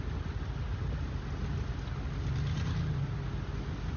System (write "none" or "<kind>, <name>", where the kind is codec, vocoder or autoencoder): none